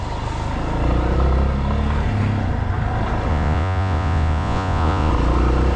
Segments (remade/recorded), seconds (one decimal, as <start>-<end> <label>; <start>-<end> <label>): 0.0-3.3 recorded; 3.3-5.1 remade; 5.1-5.8 recorded